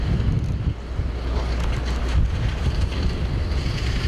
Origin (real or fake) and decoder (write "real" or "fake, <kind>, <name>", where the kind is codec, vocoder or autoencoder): real